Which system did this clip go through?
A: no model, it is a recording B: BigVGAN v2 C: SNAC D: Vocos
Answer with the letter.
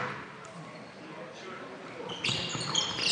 B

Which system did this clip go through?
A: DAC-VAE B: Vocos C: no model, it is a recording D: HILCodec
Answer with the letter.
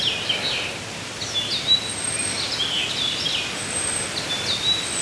C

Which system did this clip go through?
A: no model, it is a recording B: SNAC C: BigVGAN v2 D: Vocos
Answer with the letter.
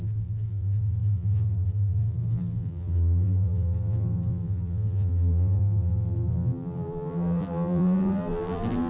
C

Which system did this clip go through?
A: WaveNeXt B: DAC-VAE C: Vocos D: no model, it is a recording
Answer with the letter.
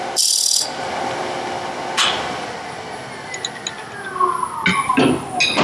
D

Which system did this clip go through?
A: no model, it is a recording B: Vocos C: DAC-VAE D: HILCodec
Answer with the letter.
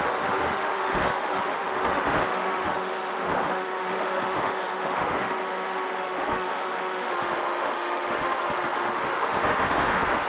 C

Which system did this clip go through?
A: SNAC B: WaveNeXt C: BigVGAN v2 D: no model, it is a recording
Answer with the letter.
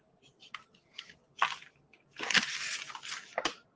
D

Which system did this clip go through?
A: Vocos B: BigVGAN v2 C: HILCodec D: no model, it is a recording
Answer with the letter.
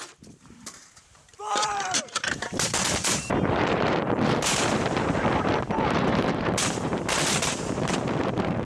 B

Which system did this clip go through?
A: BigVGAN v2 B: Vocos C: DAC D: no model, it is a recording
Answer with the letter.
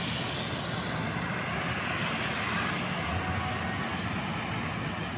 D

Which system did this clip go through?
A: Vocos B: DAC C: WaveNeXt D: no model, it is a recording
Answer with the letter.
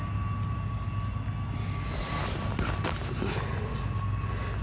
D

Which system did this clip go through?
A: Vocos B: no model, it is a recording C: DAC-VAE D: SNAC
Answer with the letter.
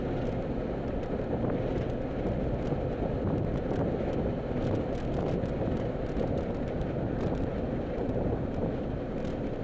B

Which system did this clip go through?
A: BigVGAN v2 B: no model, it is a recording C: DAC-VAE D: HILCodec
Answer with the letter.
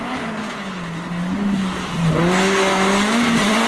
B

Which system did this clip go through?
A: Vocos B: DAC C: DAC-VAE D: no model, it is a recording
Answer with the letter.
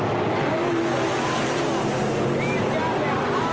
D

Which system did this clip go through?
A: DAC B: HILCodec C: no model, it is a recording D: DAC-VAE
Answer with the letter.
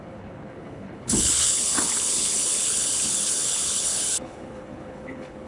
B